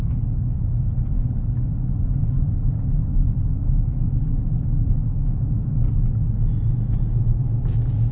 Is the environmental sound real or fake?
real